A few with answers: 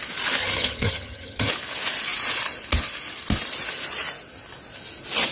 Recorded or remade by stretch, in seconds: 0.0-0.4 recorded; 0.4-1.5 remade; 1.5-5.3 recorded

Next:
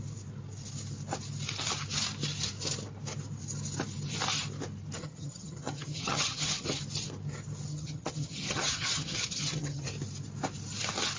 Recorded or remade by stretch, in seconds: 0.0-5.0 recorded; 5.0-6.8 remade; 6.8-7.7 recorded; 7.7-9.9 remade; 9.9-11.2 recorded

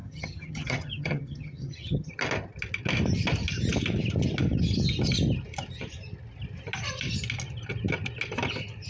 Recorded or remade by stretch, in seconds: 0.0-2.1 remade; 2.1-8.9 recorded

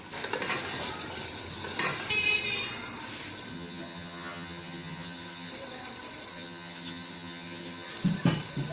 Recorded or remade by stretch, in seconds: 0.0-3.5 recorded; 3.5-5.5 remade; 5.5-6.3 recorded; 6.3-7.9 remade; 7.9-8.7 recorded

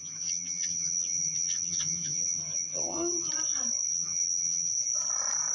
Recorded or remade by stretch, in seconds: 0.0-3.3 remade; 3.3-3.9 recorded; 3.9-4.7 remade; 4.7-5.5 recorded

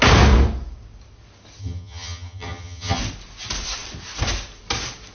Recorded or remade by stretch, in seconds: 0.0-1.6 recorded; 1.6-3.0 remade; 3.0-5.1 recorded

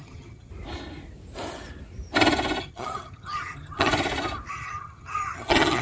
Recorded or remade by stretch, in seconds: 0.0-0.5 remade; 0.5-2.6 recorded; 2.6-3.9 remade; 3.9-4.5 recorded; 4.5-5.8 remade